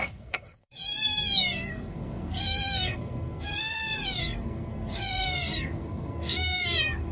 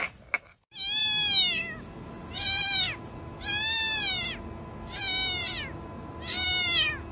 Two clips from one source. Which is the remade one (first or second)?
first